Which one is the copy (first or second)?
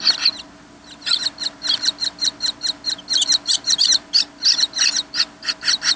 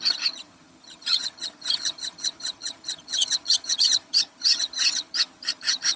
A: second